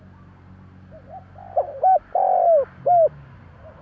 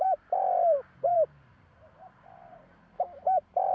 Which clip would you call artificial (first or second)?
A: second